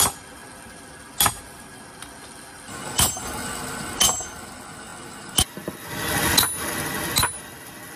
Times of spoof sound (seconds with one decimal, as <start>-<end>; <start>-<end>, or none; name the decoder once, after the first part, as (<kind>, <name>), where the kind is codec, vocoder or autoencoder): none

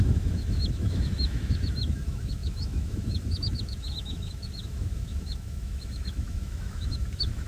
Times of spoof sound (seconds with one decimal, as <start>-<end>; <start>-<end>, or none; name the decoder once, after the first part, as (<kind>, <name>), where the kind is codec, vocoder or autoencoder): 0.0-7.5 (autoencoder, DAC-VAE)

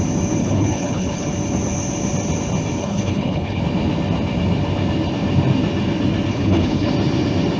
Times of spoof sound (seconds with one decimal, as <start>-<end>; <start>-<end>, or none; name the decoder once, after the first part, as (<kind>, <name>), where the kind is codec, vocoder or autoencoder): 0.4-1.3 (codec, HILCodec); 2.8-3.6; 6.3-6.9

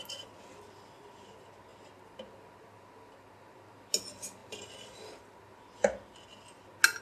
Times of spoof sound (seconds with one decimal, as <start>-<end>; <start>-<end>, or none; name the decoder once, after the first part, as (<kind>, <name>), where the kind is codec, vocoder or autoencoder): none

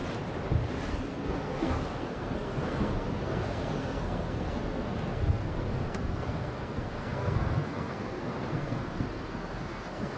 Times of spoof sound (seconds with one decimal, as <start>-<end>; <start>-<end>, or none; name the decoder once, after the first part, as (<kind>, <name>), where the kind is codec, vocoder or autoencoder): 0.9-10.2 (codec, SNAC)

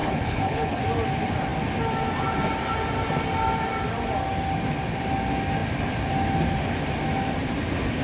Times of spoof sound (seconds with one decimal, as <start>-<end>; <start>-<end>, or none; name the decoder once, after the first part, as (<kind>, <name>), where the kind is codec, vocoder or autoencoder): 0.0-0.8 (codec, HILCodec)

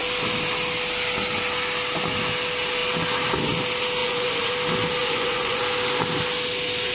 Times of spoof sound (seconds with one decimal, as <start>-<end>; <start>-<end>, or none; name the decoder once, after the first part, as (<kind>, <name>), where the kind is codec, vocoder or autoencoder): 4.0-4.5 (vocoder, Vocos); 5.0-5.6

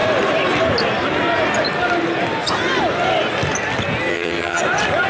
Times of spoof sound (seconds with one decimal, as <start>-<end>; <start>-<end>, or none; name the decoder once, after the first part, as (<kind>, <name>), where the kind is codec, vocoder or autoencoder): 4.1-4.6 (vocoder, HiFi-GAN)